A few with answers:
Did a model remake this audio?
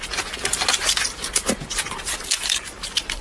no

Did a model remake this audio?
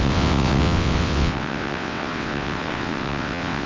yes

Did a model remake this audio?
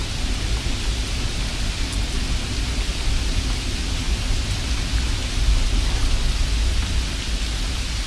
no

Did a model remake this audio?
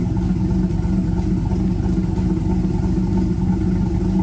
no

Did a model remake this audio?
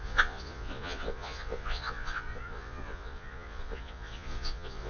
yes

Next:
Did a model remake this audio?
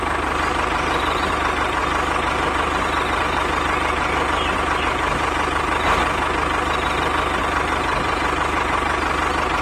no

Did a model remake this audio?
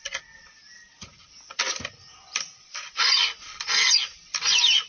no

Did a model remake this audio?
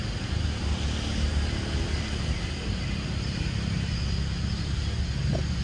yes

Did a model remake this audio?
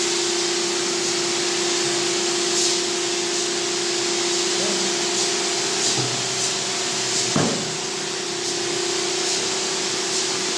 no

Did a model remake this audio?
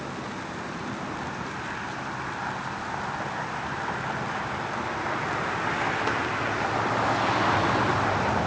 no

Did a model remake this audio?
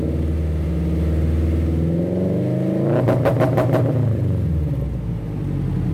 no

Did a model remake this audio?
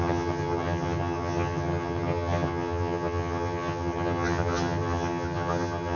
yes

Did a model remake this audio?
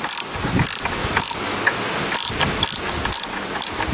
no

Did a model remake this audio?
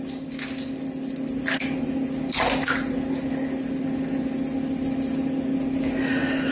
no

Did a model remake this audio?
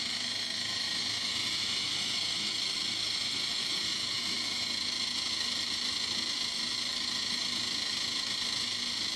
yes